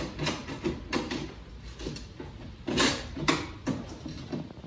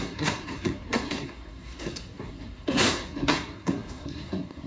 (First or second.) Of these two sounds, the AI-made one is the second